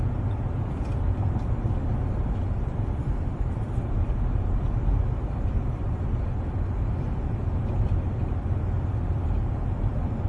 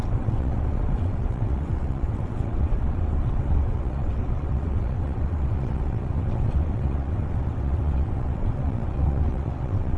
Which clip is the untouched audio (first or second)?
first